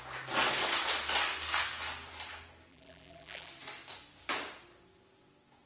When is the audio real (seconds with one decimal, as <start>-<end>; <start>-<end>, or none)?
0.0-2.7; 3.5-5.7